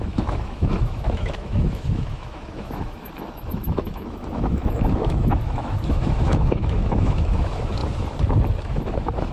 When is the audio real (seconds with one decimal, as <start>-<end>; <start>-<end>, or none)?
7.8-8.6